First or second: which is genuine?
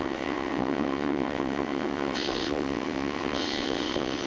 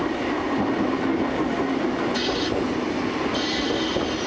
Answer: second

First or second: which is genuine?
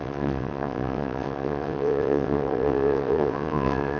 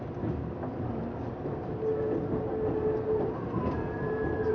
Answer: second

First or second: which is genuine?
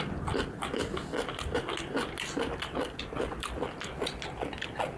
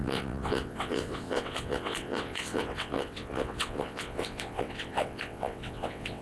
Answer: first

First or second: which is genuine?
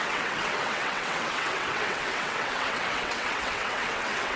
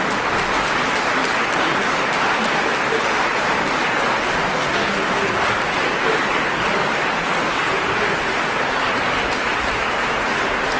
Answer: second